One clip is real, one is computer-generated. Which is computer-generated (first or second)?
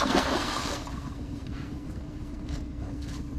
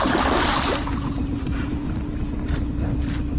first